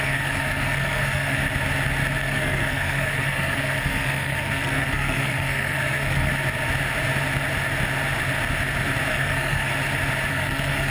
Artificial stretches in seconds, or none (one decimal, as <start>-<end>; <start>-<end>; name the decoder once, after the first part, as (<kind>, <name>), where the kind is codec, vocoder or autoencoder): 0.0-1.4 (codec, SNAC); 2.2-6.3; 9.1-9.7; 10.3-10.9